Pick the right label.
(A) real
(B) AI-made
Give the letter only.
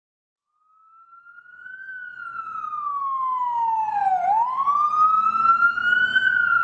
A